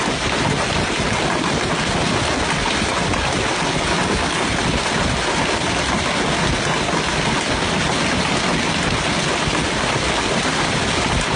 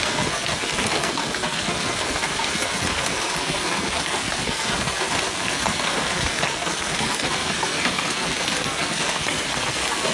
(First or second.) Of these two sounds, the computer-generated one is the second